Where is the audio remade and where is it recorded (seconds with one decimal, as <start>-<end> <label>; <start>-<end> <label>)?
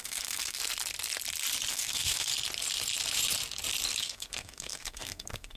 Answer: 0.0-0.6 remade; 0.6-1.7 recorded; 1.7-2.3 remade; 2.3-4.0 recorded; 4.0-5.6 remade